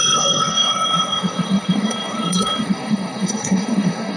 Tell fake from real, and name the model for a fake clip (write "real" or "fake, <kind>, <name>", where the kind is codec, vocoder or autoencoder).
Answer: fake, codec, SNAC